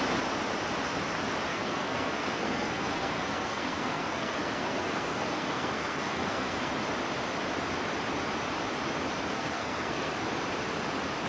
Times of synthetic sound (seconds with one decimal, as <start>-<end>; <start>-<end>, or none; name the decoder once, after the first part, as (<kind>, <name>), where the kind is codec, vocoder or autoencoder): 1.5-6.7 (codec, SNAC); 9.3-10.1